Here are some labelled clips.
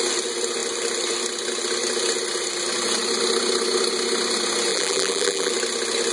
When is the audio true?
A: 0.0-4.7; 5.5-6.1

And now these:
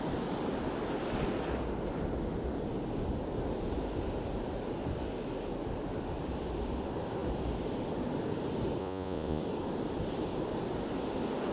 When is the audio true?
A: 0.0-8.8; 9.4-11.5

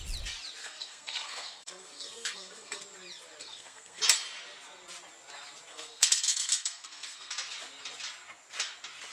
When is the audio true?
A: 0.0-0.6; 2.8-3.4; 4.0-5.7; 7.3-9.1

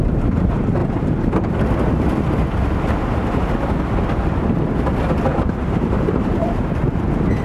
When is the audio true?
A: 0.8-5.2

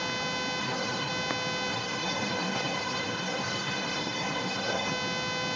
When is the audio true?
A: 0.0-0.6; 1.1-1.7; 4.9-5.6